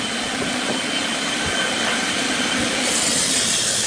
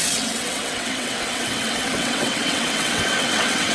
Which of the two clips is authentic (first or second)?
first